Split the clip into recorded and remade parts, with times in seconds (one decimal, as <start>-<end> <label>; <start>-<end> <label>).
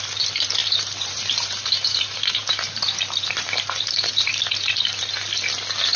0.0-0.6 recorded; 0.6-4.2 remade; 4.2-6.0 recorded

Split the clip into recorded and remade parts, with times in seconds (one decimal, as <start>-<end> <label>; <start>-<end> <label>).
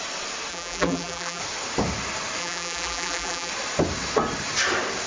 0.0-0.5 recorded; 0.5-1.4 remade; 1.4-2.4 recorded; 2.4-3.5 remade; 3.5-5.1 recorded